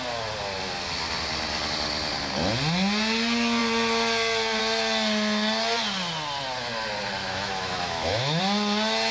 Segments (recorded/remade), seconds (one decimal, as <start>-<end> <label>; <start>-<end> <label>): 0.0-7.2 recorded; 7.2-8.4 remade; 8.4-9.1 recorded

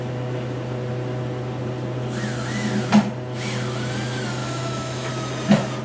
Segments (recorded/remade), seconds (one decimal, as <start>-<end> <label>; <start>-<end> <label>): 0.0-4.4 recorded; 4.4-5.1 remade; 5.1-5.8 recorded